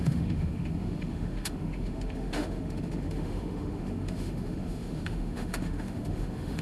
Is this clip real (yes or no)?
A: no